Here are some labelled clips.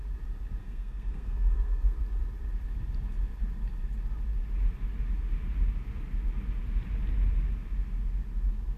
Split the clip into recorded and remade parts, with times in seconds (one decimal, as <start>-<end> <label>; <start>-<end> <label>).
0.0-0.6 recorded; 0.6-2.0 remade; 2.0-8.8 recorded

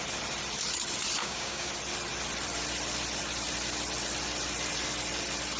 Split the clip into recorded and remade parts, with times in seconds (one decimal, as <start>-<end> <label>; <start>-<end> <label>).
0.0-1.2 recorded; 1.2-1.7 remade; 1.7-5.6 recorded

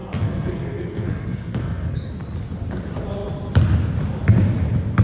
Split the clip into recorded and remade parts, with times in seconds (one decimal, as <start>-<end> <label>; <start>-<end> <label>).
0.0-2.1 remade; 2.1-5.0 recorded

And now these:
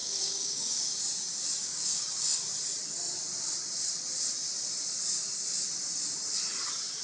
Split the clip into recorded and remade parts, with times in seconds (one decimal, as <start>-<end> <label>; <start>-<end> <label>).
0.0-1.0 remade; 1.0-1.6 recorded; 1.6-2.4 remade; 2.4-7.0 recorded

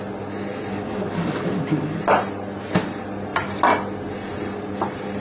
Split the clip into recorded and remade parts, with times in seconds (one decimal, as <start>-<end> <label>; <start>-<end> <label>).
0.0-0.7 recorded; 0.7-2.0 remade; 2.0-5.2 recorded